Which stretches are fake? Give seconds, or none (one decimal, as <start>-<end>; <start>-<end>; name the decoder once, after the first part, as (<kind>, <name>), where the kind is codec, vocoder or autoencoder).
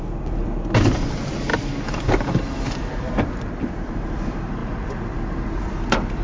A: 0.0-4.6 (vocoder, BigVGAN v2); 5.6-6.2